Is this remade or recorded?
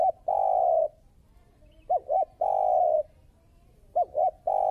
remade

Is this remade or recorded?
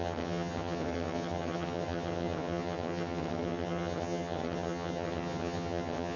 remade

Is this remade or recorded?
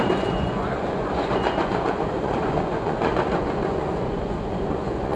remade